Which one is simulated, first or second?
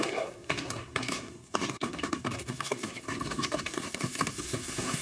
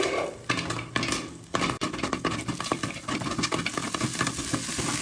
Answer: first